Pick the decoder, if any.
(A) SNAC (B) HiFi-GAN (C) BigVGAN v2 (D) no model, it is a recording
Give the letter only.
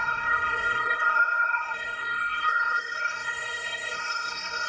A